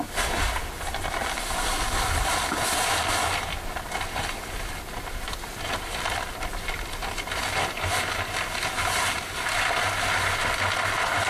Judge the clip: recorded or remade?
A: recorded